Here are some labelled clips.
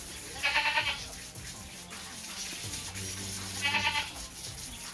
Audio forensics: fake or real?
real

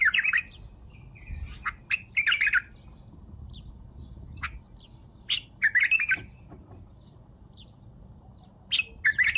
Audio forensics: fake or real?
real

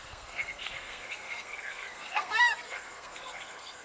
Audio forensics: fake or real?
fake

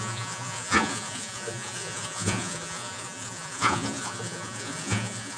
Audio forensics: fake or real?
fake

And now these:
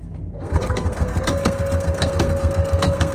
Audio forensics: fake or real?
fake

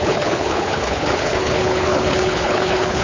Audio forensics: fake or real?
fake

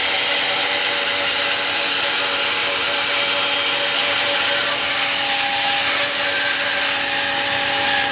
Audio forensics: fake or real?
real